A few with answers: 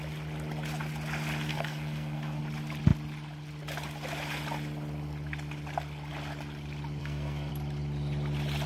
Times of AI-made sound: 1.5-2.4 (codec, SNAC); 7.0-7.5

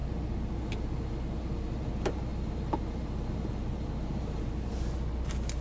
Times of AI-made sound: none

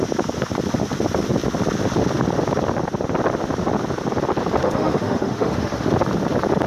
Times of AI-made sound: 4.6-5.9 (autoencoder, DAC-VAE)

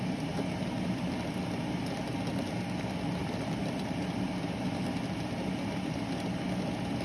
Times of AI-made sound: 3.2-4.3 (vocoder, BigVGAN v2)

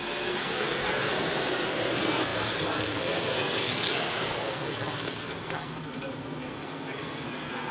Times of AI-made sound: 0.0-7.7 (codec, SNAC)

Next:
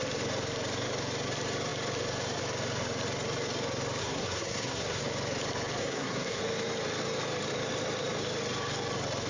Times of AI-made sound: 4.0-5.0 (codec, SNAC); 5.8-6.4

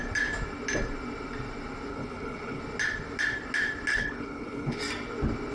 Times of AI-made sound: 1.9-2.6 (codec, HILCodec); 3.9-4.8